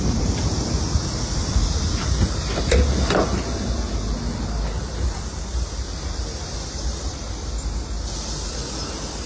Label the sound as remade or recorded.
recorded